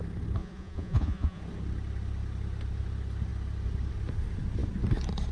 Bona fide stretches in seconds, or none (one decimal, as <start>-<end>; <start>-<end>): 0.0-0.4; 1.4-5.3